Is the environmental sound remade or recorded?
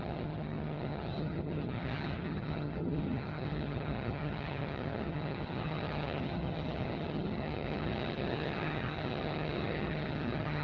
remade